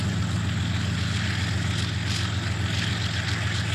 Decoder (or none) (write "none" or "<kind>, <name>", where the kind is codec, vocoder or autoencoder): none